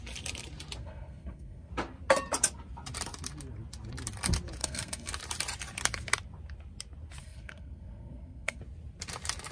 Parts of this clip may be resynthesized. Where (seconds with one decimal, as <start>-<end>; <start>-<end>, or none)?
0.8-1.7; 4.6-5.1; 7.2-8.6